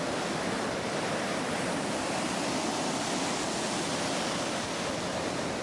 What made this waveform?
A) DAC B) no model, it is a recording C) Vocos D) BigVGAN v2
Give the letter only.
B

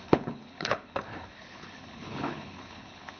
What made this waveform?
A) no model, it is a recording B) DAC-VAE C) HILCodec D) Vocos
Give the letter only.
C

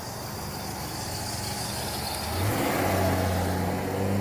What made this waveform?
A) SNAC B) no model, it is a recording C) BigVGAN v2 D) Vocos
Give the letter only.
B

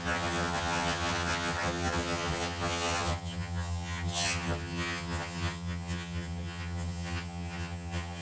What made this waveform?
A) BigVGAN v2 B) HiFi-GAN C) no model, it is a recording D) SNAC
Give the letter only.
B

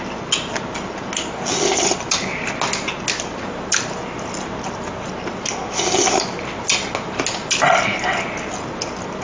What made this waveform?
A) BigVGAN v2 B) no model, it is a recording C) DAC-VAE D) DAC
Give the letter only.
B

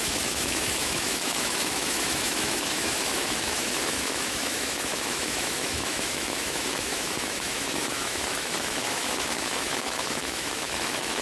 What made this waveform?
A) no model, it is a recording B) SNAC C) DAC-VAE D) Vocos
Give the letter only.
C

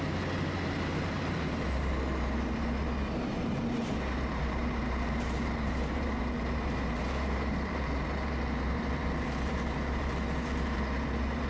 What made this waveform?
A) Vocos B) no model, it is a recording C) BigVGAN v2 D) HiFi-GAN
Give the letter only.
C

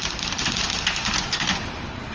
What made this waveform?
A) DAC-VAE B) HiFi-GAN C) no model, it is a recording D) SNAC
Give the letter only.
C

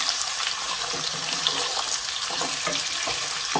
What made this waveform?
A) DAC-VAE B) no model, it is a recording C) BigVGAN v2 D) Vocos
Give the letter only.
B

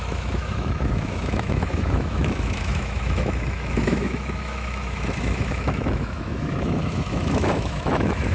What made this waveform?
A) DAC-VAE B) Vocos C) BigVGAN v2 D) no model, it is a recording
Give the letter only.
A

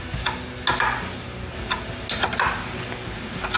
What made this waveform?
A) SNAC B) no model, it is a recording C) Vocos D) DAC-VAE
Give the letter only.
B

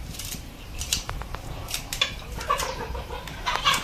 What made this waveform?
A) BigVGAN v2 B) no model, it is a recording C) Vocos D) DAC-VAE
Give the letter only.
A